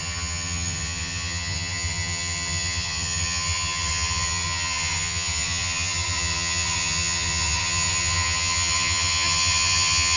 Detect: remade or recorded remade